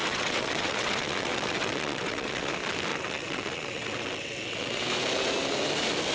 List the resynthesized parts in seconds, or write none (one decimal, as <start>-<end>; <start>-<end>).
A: 0.0-2.5; 2.9-4.8